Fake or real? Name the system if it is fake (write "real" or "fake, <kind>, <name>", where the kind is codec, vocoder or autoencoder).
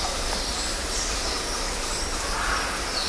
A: real